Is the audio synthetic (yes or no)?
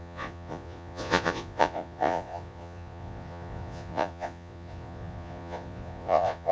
yes